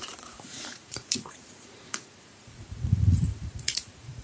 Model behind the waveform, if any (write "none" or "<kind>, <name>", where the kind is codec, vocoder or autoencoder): vocoder, Vocos